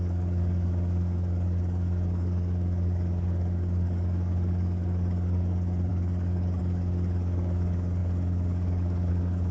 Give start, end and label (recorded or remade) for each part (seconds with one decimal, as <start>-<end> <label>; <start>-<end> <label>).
0.0-9.5 remade